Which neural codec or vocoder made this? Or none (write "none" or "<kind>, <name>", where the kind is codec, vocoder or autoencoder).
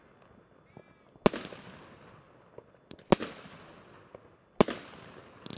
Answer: none